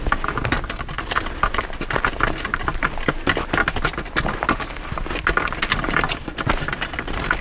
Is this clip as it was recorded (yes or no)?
yes